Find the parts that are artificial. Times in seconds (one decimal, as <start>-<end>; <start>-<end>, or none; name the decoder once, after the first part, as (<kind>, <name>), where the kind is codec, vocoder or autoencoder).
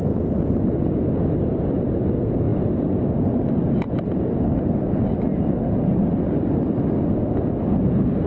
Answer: none